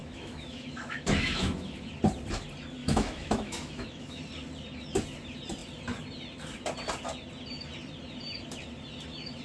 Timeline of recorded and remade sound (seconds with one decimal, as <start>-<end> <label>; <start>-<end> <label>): 0.0-1.9 remade; 1.9-2.8 recorded; 2.8-4.2 remade; 4.2-9.4 recorded